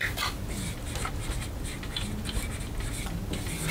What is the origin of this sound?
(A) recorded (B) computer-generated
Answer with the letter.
A